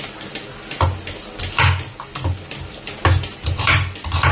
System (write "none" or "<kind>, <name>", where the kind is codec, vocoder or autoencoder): none